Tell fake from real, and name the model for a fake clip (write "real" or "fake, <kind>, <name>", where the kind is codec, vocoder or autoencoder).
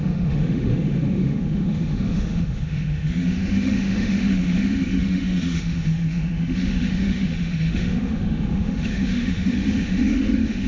fake, autoencoder, DAC-VAE